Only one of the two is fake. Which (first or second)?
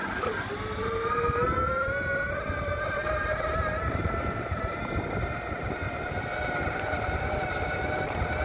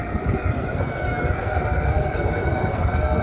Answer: second